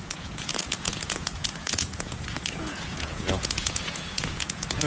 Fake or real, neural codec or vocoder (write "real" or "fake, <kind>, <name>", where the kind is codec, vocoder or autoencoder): fake, vocoder, Vocos